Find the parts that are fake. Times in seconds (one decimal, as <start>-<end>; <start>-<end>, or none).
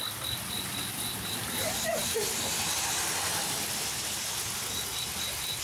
none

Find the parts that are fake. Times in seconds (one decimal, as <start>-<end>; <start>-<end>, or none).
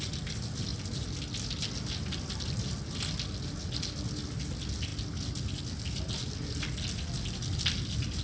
none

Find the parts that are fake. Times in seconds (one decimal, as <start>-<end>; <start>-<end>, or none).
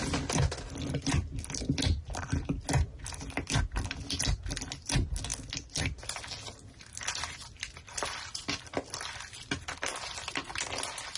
none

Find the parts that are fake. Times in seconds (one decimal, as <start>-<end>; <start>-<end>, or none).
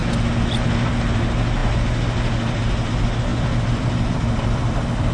3.3-5.1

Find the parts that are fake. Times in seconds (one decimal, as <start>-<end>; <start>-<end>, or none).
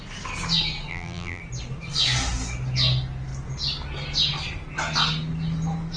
0.9-1.4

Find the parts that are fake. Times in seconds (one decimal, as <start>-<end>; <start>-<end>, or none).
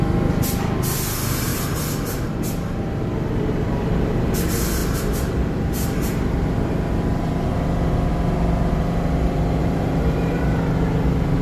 4.8-7.5; 9.6-10.6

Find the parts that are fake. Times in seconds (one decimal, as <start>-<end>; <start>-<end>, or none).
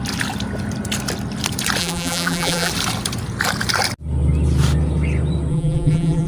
1.8-2.7; 5.5-6.3